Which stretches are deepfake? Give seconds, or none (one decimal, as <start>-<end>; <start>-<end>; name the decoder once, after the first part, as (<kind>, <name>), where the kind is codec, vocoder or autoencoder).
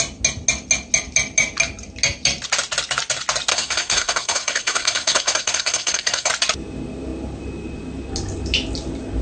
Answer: 3.5-6.3 (codec, SNAC)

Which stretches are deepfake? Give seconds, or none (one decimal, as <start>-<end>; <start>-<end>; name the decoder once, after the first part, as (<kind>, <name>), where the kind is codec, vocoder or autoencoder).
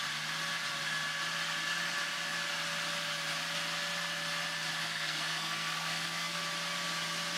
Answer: 4.8-6.4 (codec, SNAC)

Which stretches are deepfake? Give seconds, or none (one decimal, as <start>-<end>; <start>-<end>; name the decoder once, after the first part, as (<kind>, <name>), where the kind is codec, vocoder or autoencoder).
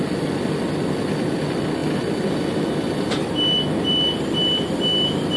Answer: none